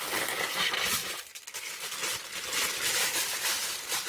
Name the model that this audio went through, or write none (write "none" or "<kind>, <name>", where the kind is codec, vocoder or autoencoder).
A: none